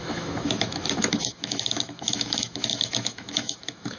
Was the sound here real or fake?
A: fake